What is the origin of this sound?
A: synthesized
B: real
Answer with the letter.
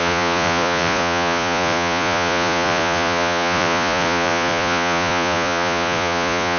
A